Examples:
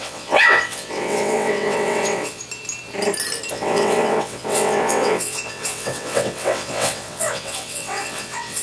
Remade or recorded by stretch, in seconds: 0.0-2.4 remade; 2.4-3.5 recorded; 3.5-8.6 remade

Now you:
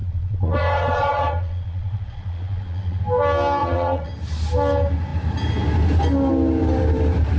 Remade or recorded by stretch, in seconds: 0.0-3.0 remade; 3.0-3.6 recorded; 3.6-4.1 remade; 4.1-7.4 recorded

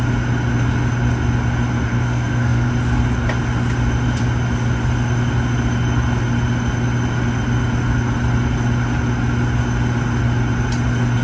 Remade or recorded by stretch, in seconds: 0.0-1.9 recorded; 1.9-2.7 remade; 2.7-11.2 recorded

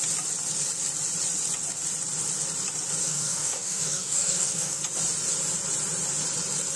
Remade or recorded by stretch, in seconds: 0.0-3.0 recorded; 3.0-4.8 remade; 4.8-6.8 recorded

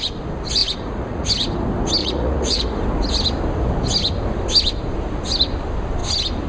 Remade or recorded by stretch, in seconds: 0.0-0.6 recorded; 0.6-1.3 remade; 1.3-2.0 recorded; 2.0-2.6 remade; 2.6-6.5 recorded

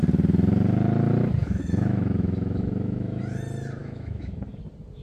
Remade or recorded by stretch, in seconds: 0.0-1.4 recorded; 1.4-3.2 remade; 3.2-3.8 recorded; 3.8-4.4 remade; 4.4-5.0 recorded